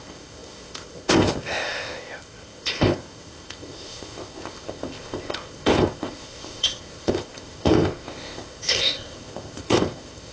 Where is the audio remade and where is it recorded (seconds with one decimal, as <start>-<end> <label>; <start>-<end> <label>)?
0.0-10.3 remade